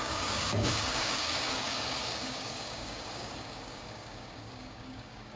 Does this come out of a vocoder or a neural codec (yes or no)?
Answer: yes